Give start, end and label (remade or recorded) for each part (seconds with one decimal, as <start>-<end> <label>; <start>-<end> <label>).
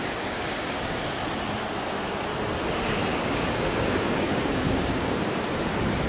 0.0-1.0 remade; 1.0-3.1 recorded; 3.1-5.4 remade; 5.4-6.1 recorded